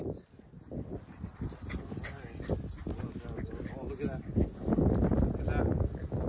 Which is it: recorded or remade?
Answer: recorded